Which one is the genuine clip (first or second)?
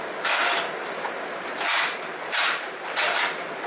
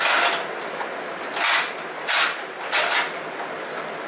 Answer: second